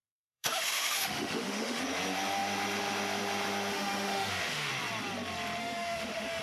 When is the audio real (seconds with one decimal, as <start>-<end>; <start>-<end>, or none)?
1.8-3.7; 4.7-5.6